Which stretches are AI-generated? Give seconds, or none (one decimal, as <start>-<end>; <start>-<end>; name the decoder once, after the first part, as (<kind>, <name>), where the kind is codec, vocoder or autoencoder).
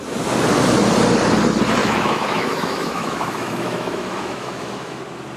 1.8-5.0 (autoencoder, DAC-VAE)